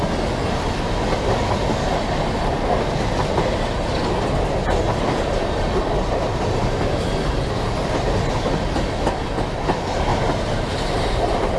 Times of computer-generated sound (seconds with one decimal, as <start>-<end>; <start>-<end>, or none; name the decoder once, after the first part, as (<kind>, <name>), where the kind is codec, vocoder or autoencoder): 10.1-11.6 (vocoder, BigVGAN v2)

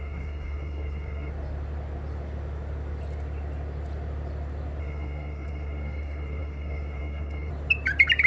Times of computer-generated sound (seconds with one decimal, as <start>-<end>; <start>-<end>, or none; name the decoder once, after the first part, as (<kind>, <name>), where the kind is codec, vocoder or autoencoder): 0.0-1.3 (codec, SNAC); 4.8-7.5

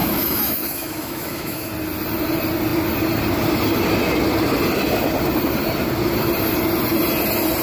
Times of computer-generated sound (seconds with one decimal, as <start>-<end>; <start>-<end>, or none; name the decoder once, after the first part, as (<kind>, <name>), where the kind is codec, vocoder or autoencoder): 0.0-1.7 (autoencoder, DAC-VAE)

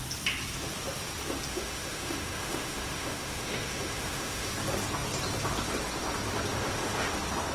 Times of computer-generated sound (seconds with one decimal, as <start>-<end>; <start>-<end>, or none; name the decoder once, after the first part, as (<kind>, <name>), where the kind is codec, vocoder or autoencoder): 1.5-4.5 (autoencoder, DAC-VAE); 6.5-7.1

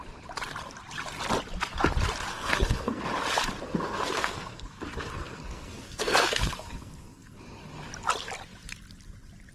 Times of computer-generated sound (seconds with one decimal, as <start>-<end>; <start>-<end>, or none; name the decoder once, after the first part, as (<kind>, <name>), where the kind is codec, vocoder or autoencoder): 2.3-3.0 (codec, SNAC); 3.7-7.4